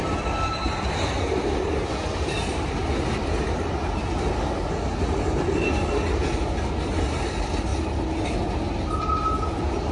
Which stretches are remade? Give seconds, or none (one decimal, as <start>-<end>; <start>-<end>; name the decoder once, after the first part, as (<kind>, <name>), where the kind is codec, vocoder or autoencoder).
none